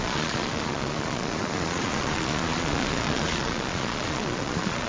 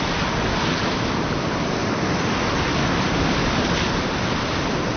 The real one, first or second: second